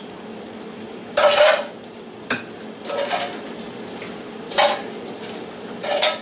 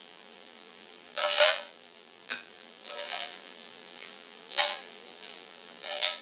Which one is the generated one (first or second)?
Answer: second